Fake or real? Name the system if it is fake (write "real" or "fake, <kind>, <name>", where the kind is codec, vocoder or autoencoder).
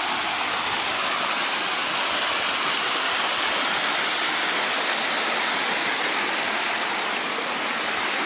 real